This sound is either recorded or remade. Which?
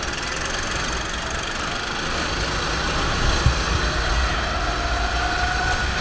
recorded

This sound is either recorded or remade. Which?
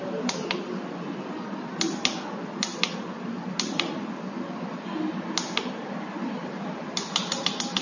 recorded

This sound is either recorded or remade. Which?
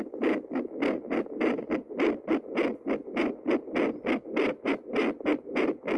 recorded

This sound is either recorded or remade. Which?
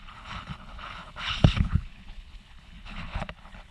remade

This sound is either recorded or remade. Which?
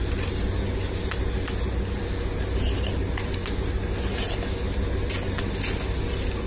recorded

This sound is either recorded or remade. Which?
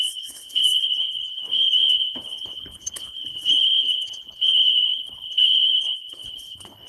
remade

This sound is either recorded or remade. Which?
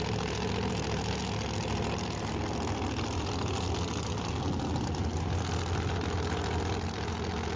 recorded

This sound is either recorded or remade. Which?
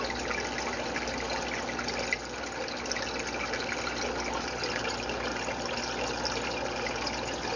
recorded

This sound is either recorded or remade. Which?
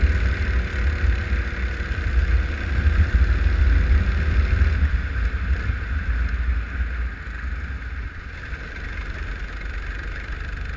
recorded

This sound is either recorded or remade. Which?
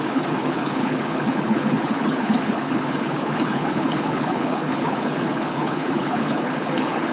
remade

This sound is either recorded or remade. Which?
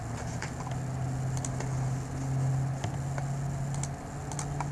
recorded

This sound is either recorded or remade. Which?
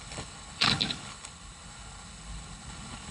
remade